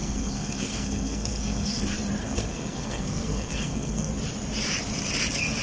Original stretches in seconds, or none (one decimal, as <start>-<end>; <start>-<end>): 1.8-2.2; 4.1-5.6